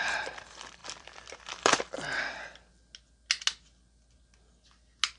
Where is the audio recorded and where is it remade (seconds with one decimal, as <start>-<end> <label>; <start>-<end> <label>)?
0.0-0.8 recorded; 0.8-1.8 remade; 1.8-5.2 recorded